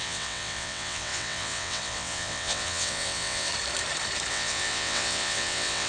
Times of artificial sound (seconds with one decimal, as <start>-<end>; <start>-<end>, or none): 0.0-3.5; 4.3-5.9